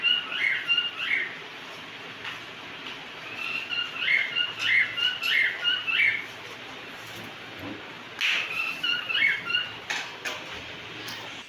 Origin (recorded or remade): recorded